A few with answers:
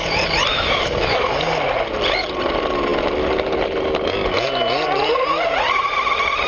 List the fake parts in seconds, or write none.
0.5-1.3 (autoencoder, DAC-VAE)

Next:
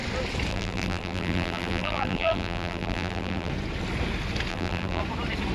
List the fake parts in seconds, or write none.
0.5-3.5 (vocoder, BigVGAN v2); 4.5-5.0

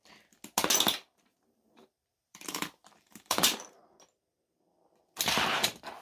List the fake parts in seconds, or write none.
1.1-3.8 (vocoder, BigVGAN v2)

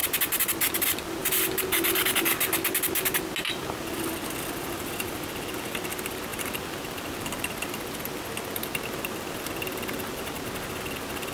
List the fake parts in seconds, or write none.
0.0-0.6 (vocoder, BigVGAN v2); 6.3-8.3

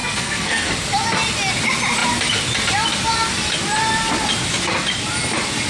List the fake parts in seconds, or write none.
0.0-0.7 (codec, SNAC)

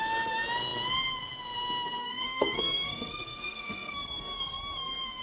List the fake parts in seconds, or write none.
2.0-5.2 (codec, SNAC)

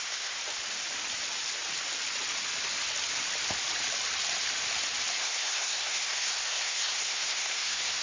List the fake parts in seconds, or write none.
0.0-0.4 (codec, SNAC); 5.2-8.0